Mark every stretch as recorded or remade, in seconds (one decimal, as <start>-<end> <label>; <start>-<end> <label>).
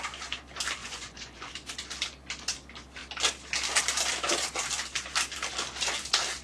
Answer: 0.0-0.8 recorded; 0.8-1.5 remade; 1.5-6.4 recorded